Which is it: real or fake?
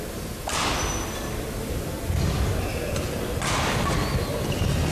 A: real